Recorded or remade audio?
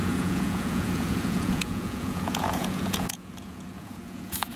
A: remade